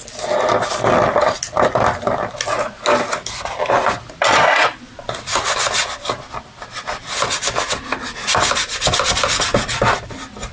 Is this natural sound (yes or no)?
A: yes